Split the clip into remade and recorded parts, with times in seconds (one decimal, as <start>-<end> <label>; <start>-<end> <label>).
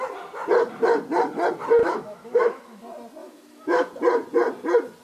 0.0-1.8 recorded; 1.8-2.8 remade; 2.8-3.2 recorded; 3.2-3.9 remade; 3.9-5.0 recorded